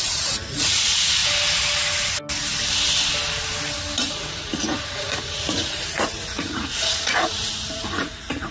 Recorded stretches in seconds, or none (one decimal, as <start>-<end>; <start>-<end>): 1.2-4.1